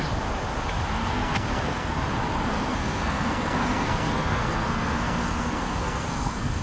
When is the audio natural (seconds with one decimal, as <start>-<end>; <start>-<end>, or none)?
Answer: 0.0-1.0; 2.0-2.5